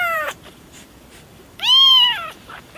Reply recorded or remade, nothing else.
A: remade